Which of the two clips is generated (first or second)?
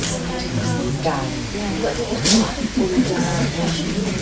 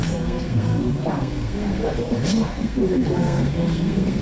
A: second